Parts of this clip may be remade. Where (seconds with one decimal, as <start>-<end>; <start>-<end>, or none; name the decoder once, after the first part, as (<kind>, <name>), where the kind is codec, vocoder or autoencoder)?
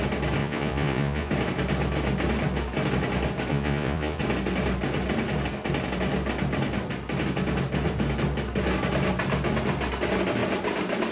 0.4-1.3 (vocoder, Vocos); 3.5-4.2